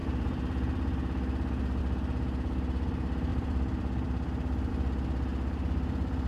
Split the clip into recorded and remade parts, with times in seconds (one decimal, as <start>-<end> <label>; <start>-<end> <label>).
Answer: 0.0-1.8 remade; 1.8-3.3 recorded; 3.3-4.7 remade; 4.7-5.3 recorded; 5.3-6.3 remade